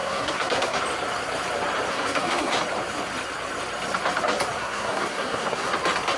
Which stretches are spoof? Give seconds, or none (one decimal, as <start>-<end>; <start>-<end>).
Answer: 0.0-0.8; 1.9-2.6; 4.6-5.7

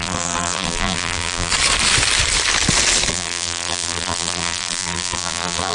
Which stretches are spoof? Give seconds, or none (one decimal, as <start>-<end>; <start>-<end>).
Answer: 0.0-1.5; 3.1-5.7

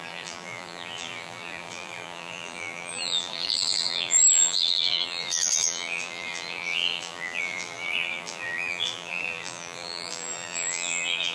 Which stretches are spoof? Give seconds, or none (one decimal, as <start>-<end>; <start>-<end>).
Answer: 0.0-11.3

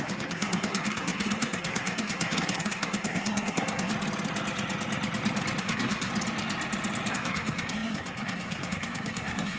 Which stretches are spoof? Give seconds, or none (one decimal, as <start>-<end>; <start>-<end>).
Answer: 0.0-3.9; 5.6-6.1; 7.1-9.6

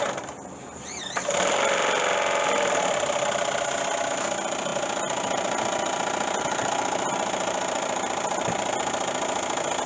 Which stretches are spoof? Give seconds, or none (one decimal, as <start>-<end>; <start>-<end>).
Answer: none